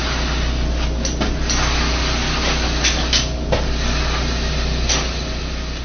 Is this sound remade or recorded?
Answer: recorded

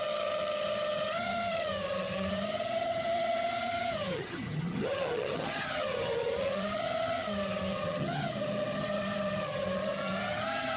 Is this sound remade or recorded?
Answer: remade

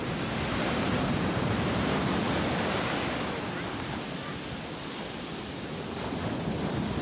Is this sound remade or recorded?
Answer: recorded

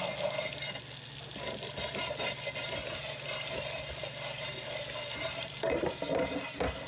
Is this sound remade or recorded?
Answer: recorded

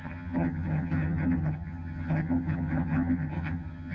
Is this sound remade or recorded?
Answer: remade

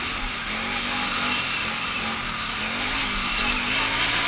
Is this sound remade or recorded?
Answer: recorded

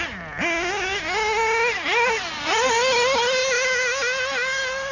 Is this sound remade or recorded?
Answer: recorded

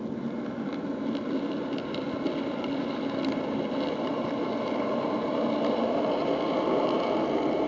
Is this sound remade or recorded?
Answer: recorded